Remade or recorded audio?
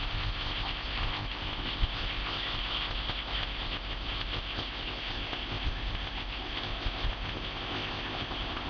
remade